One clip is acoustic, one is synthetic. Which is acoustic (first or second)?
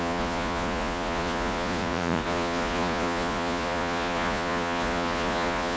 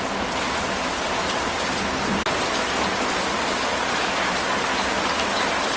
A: second